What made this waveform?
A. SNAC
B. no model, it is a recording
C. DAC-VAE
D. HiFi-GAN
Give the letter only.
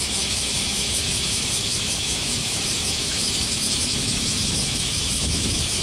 C